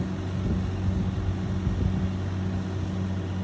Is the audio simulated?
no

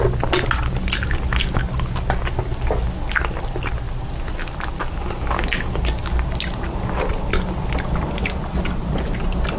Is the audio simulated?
no